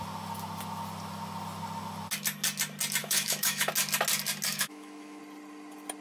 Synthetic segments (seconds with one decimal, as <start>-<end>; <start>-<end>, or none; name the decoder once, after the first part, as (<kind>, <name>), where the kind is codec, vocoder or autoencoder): 3.0-3.7 (autoencoder, DAC-VAE); 4.5-5.2